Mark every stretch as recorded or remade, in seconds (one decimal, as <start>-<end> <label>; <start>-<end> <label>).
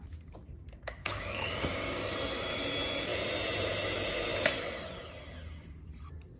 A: 0.0-1.0 recorded; 1.0-2.0 remade; 2.0-6.4 recorded